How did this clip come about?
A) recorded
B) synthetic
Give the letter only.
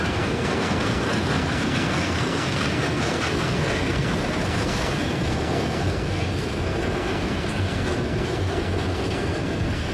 B